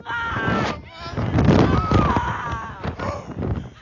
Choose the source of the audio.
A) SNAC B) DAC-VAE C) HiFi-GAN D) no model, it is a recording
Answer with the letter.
D